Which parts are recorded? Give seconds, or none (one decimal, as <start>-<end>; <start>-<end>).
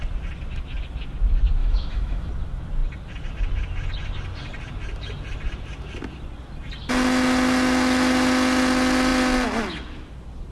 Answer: 0.0-1.6; 2.3-10.5